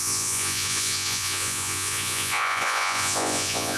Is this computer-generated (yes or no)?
yes